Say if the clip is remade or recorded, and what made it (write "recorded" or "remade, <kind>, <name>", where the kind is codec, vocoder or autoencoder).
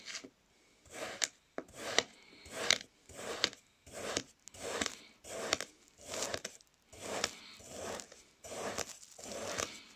recorded